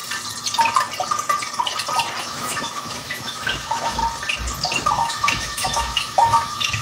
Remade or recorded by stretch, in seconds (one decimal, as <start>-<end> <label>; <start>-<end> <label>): 0.0-2.2 recorded; 2.2-4.0 remade; 4.0-4.9 recorded; 4.9-6.8 remade